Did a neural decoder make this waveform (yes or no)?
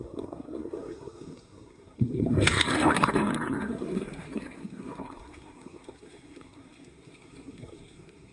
yes